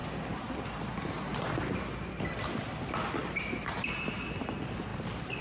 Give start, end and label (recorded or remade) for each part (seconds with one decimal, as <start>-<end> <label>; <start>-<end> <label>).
0.0-1.3 remade; 1.3-4.5 recorded; 4.5-5.4 remade